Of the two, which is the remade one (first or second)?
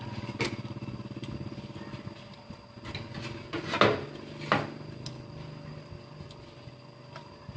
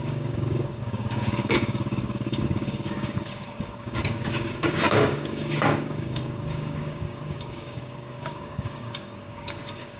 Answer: second